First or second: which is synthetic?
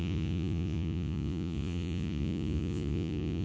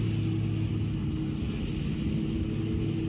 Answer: first